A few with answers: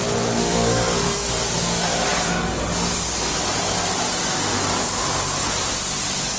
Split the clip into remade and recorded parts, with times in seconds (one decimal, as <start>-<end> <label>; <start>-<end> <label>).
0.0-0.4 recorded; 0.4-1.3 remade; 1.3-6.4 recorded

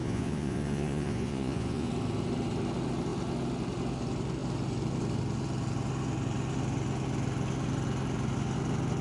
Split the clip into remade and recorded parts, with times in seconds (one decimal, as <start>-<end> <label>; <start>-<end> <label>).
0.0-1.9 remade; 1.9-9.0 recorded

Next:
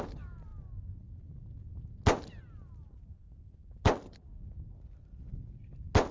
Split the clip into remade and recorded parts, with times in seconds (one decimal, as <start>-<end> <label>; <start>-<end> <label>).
0.0-6.1 recorded

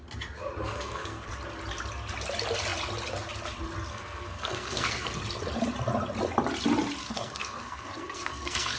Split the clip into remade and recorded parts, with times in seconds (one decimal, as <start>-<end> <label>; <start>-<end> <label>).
0.0-0.6 recorded; 0.6-1.3 remade; 1.3-3.9 recorded; 3.9-5.2 remade; 5.2-7.0 recorded; 7.0-8.8 remade

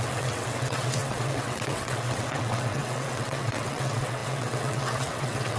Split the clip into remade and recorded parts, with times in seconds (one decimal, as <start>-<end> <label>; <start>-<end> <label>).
0.0-5.6 remade